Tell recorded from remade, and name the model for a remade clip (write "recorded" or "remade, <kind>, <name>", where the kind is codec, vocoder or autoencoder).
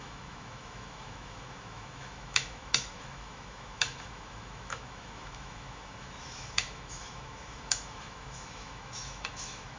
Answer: remade, autoencoder, DAC-VAE